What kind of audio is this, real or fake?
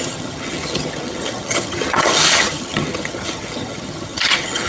fake